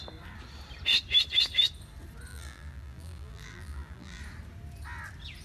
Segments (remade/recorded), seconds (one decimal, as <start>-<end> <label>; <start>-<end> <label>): 0.0-2.3 recorded; 2.3-4.2 remade; 4.2-5.4 recorded